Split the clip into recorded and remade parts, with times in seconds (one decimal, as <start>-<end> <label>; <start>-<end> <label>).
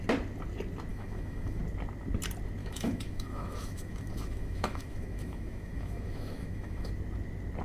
0.0-0.9 recorded; 0.9-1.6 remade; 1.6-2.6 recorded; 2.6-6.9 remade; 6.9-7.6 recorded